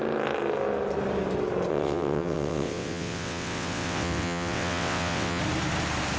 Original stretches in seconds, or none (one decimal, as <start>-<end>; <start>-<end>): 0.0-1.7; 5.4-6.2